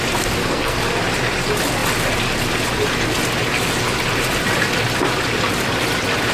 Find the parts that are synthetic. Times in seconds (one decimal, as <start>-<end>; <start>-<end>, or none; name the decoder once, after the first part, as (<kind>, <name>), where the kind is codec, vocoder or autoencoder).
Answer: 0.4-1.0 (codec, SNAC)